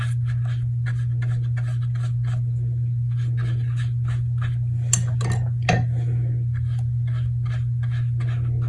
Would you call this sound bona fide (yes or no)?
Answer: yes